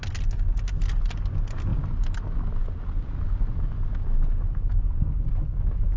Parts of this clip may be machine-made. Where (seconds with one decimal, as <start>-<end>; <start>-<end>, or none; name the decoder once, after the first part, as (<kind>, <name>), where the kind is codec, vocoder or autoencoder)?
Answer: none